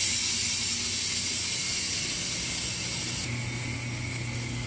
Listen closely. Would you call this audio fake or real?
real